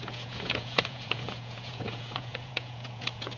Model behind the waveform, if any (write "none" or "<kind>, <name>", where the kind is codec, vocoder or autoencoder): vocoder, Vocos